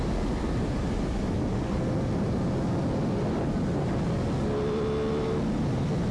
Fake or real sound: real